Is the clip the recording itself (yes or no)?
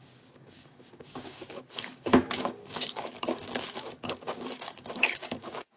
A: no